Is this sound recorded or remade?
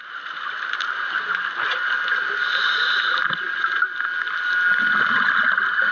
recorded